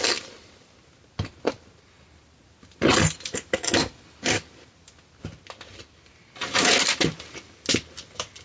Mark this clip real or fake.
real